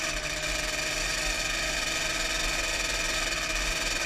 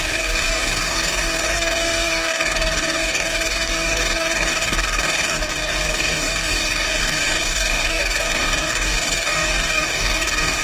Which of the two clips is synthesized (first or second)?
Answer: second